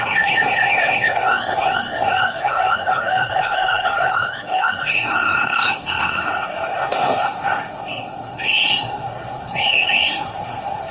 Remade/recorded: remade